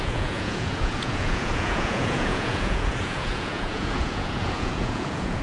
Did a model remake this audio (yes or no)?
yes